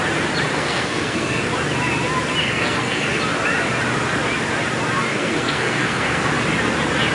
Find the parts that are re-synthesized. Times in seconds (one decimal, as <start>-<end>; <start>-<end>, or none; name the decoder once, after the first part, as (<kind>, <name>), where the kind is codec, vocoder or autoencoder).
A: 0.5-1.5 (codec, SNAC); 2.4-3.2; 5.1-6.3